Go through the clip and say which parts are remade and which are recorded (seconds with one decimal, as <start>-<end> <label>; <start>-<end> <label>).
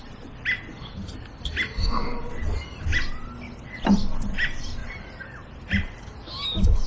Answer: 0.0-4.8 recorded; 4.8-6.0 remade; 6.0-6.9 recorded